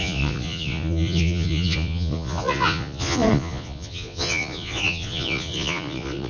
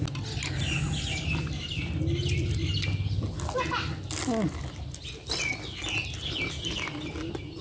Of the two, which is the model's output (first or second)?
first